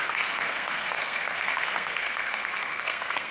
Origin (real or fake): fake